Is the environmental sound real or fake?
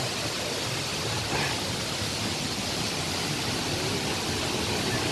real